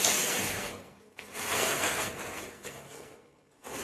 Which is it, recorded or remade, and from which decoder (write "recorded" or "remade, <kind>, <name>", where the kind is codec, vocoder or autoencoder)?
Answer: remade, codec, SNAC